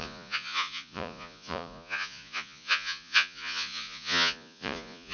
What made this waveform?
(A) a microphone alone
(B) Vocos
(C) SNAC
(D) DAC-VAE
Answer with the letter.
B